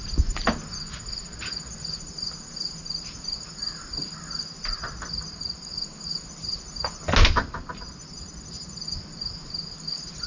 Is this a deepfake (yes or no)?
no